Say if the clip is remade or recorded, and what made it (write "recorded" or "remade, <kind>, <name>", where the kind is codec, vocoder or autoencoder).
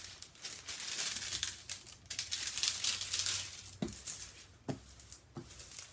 recorded